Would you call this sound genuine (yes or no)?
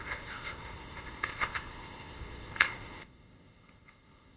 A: no